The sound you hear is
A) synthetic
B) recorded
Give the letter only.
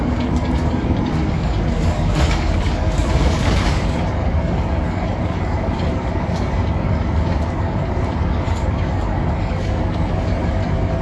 A